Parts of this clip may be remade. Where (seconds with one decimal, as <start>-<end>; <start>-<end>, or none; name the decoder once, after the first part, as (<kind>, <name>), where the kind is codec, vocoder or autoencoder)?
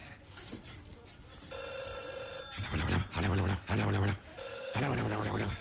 4.5-5.6 (codec, DAC)